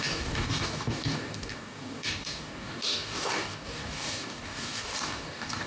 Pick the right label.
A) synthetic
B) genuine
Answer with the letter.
A